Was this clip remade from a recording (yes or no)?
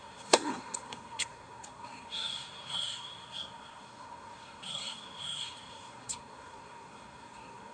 yes